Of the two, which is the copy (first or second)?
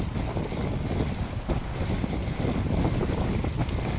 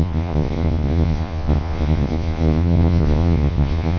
second